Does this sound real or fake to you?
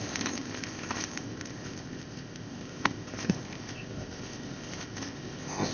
fake